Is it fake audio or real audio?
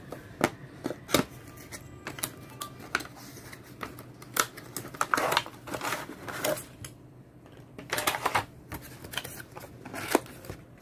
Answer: real